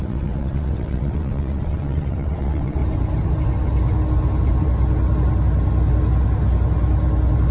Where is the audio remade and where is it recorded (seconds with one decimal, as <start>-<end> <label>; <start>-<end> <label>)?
0.0-2.8 remade; 2.8-7.5 recorded